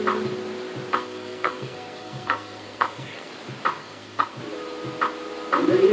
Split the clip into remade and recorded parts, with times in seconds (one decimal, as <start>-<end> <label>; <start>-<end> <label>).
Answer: 0.0-0.9 recorded; 0.9-3.3 remade; 3.3-3.8 recorded; 3.8-4.4 remade; 4.4-5.9 recorded